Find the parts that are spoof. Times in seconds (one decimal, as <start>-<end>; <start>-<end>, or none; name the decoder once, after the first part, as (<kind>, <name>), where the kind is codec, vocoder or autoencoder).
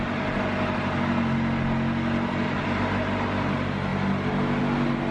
none